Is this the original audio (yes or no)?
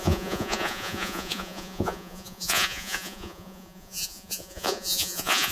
no